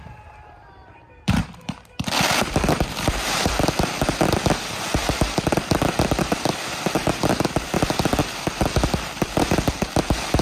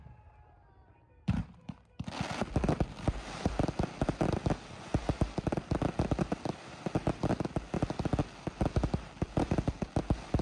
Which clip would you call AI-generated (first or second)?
first